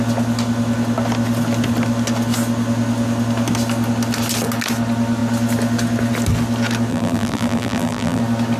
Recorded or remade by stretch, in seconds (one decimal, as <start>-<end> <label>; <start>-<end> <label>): 0.0-6.9 recorded; 6.9-8.2 remade; 8.2-8.6 recorded

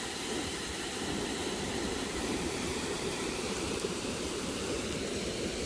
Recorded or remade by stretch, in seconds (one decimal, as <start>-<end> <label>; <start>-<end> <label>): 0.0-1.4 recorded; 1.4-4.6 remade; 4.6-5.7 recorded

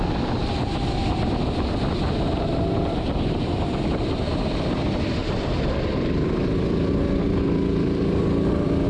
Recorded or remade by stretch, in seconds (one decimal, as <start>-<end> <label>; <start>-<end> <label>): 0.0-8.9 remade

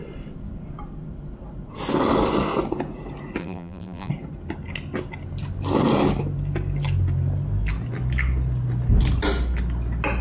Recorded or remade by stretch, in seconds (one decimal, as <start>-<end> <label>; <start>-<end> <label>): 0.0-3.4 recorded; 3.4-4.1 remade; 4.1-10.2 recorded

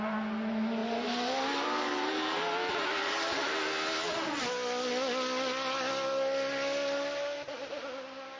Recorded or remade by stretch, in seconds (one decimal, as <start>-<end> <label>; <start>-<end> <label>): 0.0-0.8 recorded; 0.8-3.7 remade; 3.7-8.4 recorded

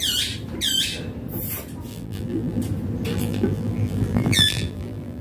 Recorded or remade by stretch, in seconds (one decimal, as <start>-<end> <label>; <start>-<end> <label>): 0.0-1.9 recorded; 1.9-2.6 remade; 2.6-3.1 recorded; 3.1-5.2 remade